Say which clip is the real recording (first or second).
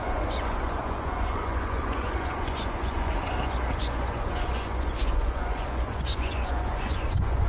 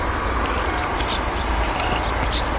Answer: second